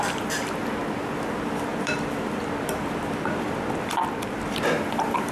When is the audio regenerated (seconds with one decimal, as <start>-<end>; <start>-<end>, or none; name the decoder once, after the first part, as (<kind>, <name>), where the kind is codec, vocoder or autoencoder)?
1.7-4.0 (vocoder, BigVGAN v2)